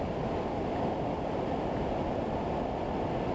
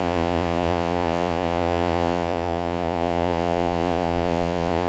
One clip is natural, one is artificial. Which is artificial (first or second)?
second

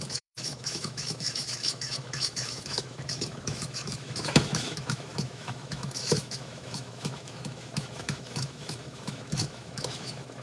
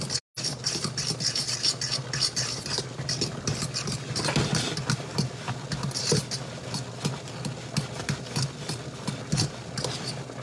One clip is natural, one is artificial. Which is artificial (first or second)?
first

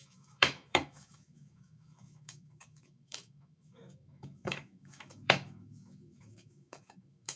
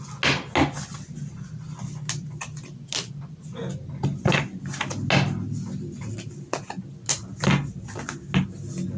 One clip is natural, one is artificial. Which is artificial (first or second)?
first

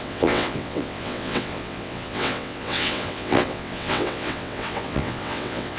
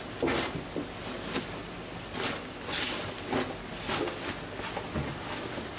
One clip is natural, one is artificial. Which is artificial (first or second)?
first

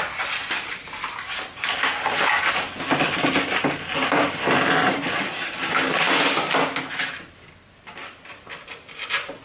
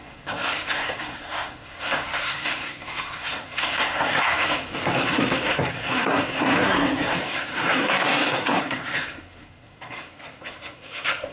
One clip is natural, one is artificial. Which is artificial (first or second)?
second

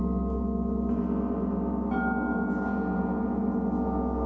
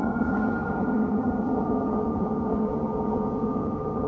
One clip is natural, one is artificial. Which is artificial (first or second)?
second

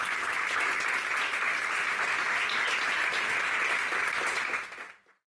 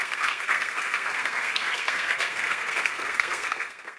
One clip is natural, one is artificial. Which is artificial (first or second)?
second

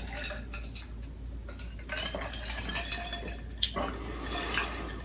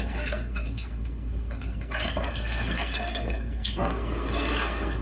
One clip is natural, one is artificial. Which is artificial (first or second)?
second